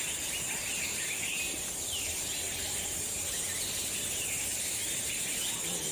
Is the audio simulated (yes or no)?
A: no